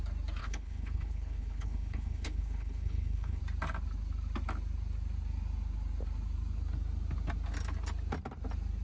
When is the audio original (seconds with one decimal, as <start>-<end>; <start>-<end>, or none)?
0.0-0.4; 3.4-8.8